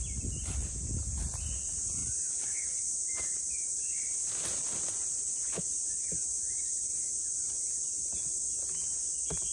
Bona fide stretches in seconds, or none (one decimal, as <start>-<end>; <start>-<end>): 0.0-9.5